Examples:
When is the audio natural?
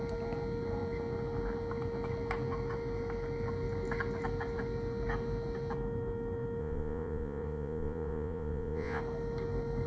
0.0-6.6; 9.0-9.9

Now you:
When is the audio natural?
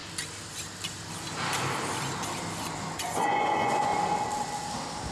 0.0-3.0; 3.9-5.1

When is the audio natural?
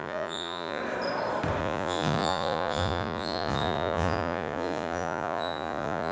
0.8-1.6